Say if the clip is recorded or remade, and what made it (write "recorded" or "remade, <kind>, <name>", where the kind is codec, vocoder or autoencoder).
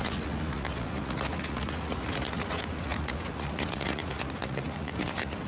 remade, vocoder, Vocos